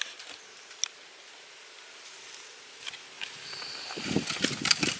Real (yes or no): yes